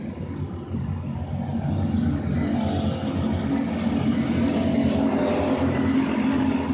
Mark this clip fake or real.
real